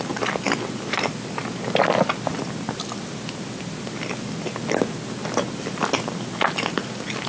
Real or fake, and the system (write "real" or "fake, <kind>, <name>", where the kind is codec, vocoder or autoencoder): real